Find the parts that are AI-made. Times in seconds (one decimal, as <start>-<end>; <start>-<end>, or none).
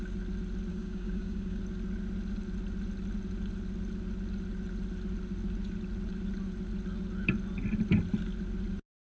0.7-1.6